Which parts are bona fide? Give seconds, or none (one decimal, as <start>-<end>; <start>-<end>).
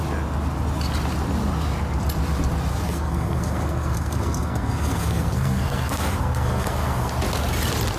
0.0-2.7; 7.1-8.0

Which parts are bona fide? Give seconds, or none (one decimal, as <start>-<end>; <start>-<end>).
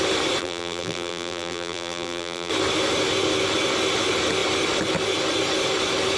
0.0-0.4; 2.5-6.2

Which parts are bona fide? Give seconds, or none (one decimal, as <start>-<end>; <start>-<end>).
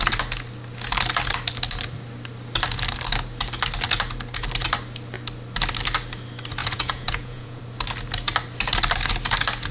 0.0-6.6; 7.6-9.7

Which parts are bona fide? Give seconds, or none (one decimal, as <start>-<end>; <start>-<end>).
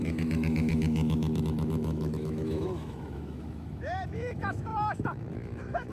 none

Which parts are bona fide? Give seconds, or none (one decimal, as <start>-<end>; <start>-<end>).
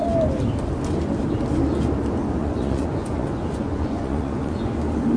0.0-2.4; 4.7-5.2